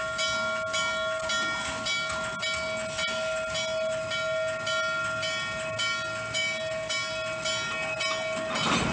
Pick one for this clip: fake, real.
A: real